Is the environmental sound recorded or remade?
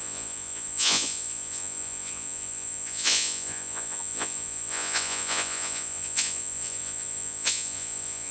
remade